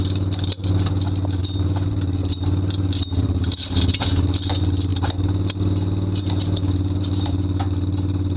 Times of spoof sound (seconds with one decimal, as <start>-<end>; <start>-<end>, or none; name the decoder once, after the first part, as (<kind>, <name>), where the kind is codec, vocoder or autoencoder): 0.0-0.6 (vocoder, BigVGAN v2); 1.4-4.9; 6.2-8.4